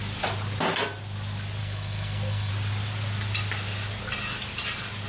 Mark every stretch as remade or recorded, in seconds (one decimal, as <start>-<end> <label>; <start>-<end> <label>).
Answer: 0.0-1.6 recorded; 1.6-2.5 remade; 2.5-5.1 recorded